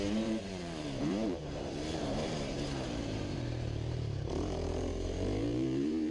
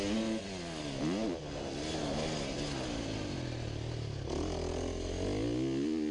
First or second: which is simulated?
first